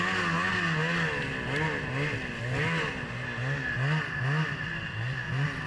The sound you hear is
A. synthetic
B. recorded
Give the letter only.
B